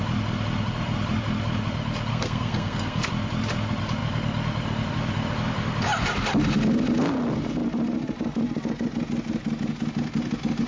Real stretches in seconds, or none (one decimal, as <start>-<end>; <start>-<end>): 0.0-2.1; 3.1-10.7